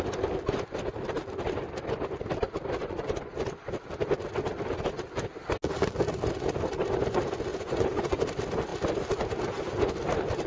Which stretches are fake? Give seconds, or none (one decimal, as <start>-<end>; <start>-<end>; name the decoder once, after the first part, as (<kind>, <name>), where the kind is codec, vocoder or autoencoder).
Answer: 2.8-3.3 (vocoder, Vocos); 7.5-8.2